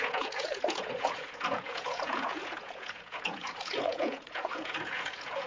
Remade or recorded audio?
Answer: remade